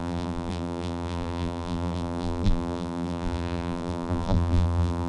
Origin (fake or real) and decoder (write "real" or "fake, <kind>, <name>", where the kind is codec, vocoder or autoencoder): fake, vocoder, BigVGAN v2